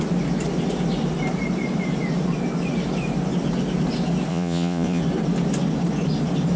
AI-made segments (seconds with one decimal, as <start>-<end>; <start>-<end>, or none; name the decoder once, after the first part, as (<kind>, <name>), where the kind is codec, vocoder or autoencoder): 4.3-5.0 (vocoder, Vocos)